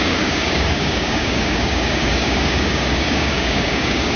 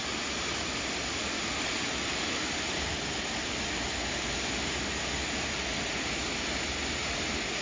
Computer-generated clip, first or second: first